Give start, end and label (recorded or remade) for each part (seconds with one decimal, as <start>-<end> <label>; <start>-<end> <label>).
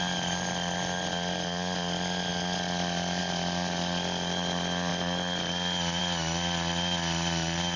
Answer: 0.0-7.8 recorded